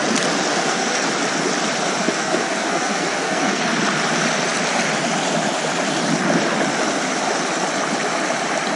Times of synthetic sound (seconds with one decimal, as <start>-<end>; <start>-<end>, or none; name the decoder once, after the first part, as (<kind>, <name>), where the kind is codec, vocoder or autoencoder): 0.5-1.1 (codec, SNAC); 2.0-3.6